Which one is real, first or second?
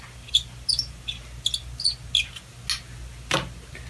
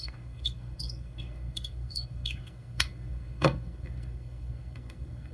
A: first